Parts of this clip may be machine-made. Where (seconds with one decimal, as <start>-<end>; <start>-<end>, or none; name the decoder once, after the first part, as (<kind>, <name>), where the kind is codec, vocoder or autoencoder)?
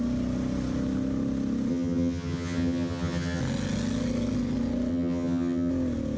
1.7-3.4 (vocoder, HiFi-GAN); 4.9-5.7